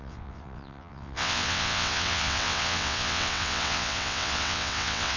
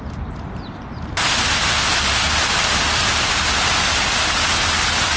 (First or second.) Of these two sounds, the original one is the second